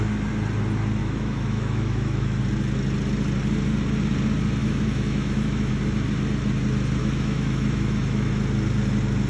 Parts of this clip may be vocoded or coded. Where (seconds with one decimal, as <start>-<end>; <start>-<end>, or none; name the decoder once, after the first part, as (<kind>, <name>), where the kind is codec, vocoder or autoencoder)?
1.0-2.4 (autoencoder, DAC-VAE); 4.6-5.7; 7.0-8.3